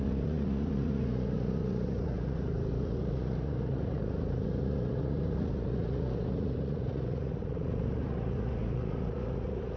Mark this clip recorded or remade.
remade